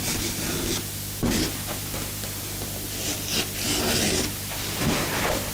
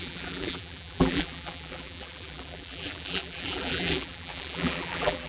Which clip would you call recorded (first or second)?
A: first